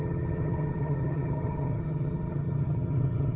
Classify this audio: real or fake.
fake